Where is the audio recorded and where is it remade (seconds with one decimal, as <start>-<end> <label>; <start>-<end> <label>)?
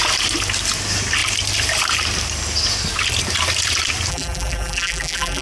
0.0-4.1 recorded; 4.1-5.4 remade